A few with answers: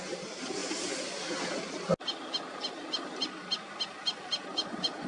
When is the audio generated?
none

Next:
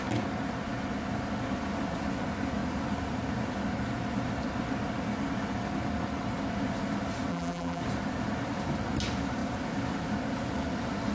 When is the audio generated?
7.3-7.8 (vocoder, BigVGAN v2)

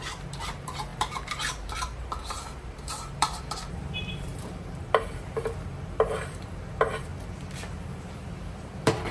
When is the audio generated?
0.0-7.1 (vocoder, BigVGAN v2); 7.8-9.1